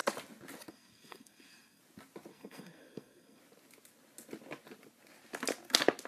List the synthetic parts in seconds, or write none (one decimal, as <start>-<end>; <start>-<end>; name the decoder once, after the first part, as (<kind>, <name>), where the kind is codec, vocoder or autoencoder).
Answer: 0.7-1.8 (codec, SNAC); 2.3-3.4